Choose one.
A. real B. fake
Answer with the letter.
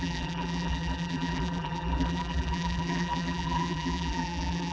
B